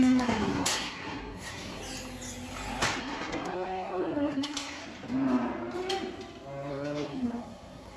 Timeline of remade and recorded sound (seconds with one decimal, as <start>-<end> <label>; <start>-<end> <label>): 0.0-1.8 remade; 1.8-3.0 recorded; 3.0-4.8 remade; 4.8-6.7 recorded; 6.7-8.0 remade